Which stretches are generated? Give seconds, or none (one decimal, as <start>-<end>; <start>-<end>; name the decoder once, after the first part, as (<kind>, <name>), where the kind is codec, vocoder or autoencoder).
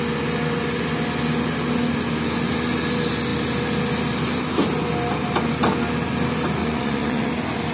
6.6-7.3 (vocoder, Vocos)